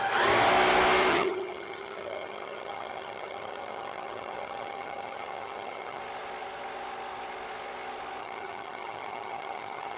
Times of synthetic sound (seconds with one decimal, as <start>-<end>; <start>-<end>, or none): 1.1-6.0; 8.2-10.0